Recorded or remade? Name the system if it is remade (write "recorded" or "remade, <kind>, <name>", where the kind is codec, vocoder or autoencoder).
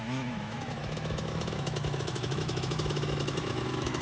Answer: remade, autoencoder, DAC-VAE